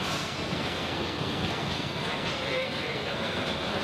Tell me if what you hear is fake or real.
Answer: fake